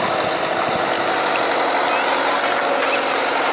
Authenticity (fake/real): real